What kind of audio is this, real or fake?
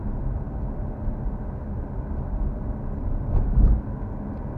real